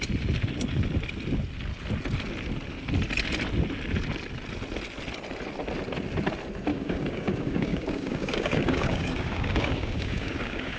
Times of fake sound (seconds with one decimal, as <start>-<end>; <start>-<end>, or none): 6.7-10.8